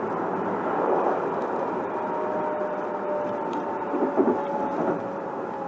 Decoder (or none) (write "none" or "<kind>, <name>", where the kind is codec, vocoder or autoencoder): none